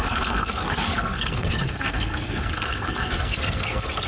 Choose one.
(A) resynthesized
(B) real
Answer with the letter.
A